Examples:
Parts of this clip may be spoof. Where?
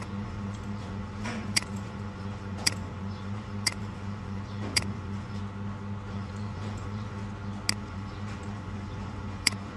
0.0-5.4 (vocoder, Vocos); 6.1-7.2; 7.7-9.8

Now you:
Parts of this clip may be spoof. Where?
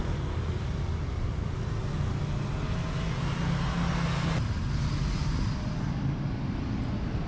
none